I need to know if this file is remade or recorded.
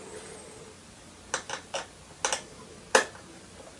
recorded